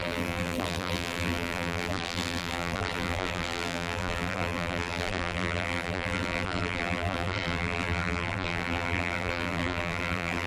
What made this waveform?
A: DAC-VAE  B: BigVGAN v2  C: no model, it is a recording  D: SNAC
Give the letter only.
B